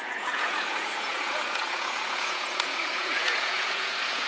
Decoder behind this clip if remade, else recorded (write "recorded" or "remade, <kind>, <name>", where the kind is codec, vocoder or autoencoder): remade, vocoder, Vocos